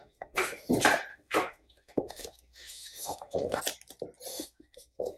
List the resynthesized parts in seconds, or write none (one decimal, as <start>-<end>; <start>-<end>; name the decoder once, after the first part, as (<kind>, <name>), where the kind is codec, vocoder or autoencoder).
0.0-0.7 (autoencoder, DAC-VAE); 1.1-3.6; 4.3-5.2